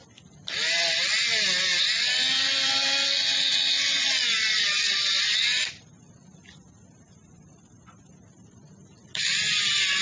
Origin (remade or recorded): recorded